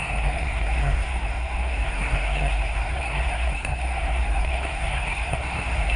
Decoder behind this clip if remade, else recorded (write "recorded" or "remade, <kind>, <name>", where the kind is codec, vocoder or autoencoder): remade, codec, SNAC